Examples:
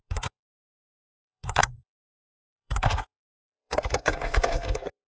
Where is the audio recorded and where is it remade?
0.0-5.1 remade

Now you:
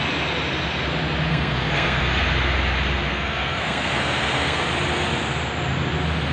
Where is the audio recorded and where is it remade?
0.0-1.3 recorded; 1.3-2.2 remade; 2.2-3.1 recorded; 3.1-4.6 remade; 4.6-6.3 recorded

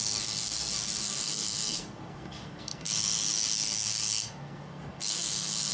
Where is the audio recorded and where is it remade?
0.0-5.7 remade

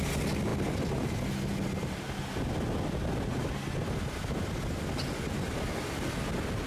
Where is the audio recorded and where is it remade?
0.0-6.7 recorded

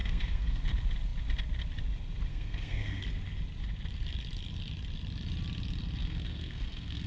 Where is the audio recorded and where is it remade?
0.0-0.6 remade; 0.6-2.3 recorded; 2.3-3.0 remade; 3.0-6.0 recorded; 6.0-7.1 remade

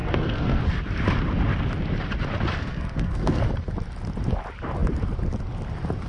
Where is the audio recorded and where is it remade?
0.0-0.6 remade; 0.6-2.6 recorded; 2.6-3.4 remade; 3.4-6.1 recorded

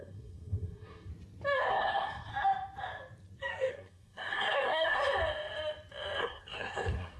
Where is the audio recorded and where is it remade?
0.0-1.1 remade; 1.1-1.7 recorded; 1.7-2.3 remade; 2.3-3.7 recorded; 3.7-5.0 remade; 5.0-6.2 recorded; 6.2-7.2 remade

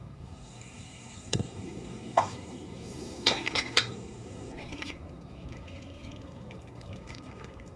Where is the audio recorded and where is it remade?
0.0-7.8 remade